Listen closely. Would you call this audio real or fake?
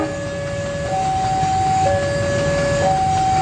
real